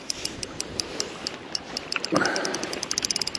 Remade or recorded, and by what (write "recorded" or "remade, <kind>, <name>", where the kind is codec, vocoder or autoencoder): recorded